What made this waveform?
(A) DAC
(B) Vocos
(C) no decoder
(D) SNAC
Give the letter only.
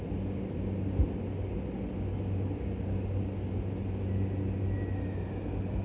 C